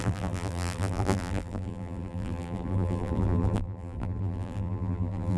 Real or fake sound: fake